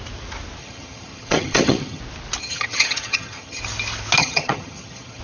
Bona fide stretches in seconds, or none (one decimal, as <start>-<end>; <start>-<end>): 0.0-0.6; 2.0-2.4; 3.6-4.2